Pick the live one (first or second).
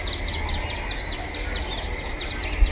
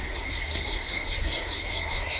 first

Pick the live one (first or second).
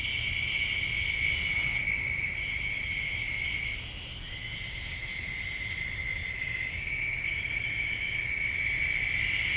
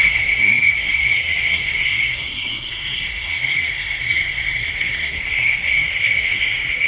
first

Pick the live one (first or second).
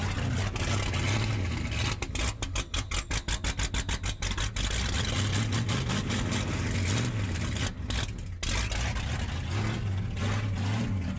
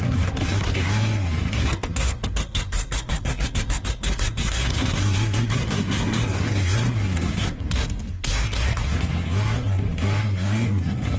first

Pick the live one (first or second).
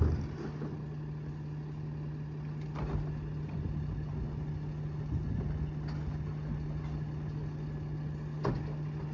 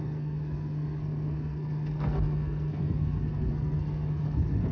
first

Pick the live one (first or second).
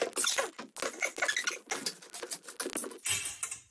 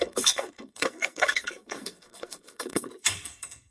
first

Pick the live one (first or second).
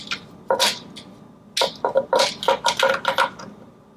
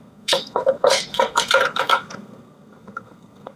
first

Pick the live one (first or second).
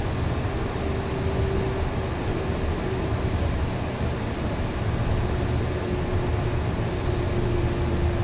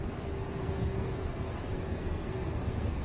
first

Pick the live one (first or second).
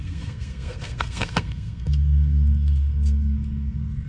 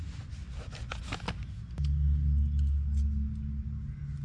second